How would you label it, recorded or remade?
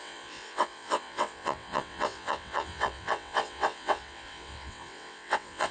remade